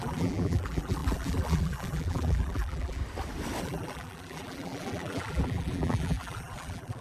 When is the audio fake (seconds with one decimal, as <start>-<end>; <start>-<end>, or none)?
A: 0.0-3.0; 3.6-7.0